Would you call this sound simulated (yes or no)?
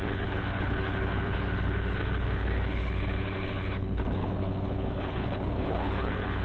yes